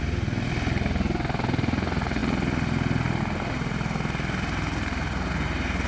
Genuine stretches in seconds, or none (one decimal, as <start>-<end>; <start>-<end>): 0.0-5.9